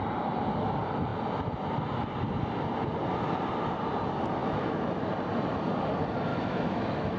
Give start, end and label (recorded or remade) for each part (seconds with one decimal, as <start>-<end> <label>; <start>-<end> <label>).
0.0-4.4 recorded; 4.4-5.1 remade; 5.1-6.3 recorded; 6.3-7.2 remade